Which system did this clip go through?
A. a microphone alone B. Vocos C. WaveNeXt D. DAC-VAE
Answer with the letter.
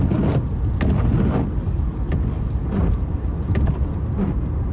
A